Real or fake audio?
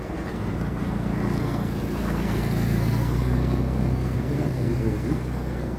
fake